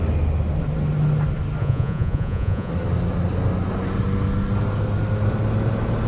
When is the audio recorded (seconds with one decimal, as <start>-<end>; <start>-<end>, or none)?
0.0-1.6; 2.7-6.1